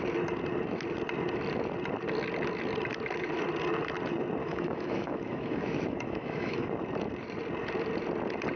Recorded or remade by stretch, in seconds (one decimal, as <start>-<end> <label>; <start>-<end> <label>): 0.0-4.4 recorded; 4.4-6.7 remade; 6.7-8.6 recorded